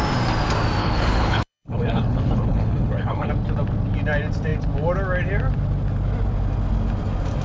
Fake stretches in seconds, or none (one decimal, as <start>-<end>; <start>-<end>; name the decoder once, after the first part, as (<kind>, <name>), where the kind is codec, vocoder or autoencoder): 0.8-3.3 (codec, HILCodec)